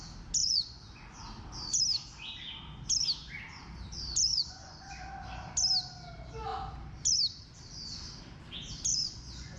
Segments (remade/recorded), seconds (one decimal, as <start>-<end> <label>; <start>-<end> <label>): 0.0-0.4 recorded; 0.4-1.2 remade; 1.2-4.3 recorded; 4.3-4.9 remade; 4.9-8.9 recorded; 8.9-9.6 remade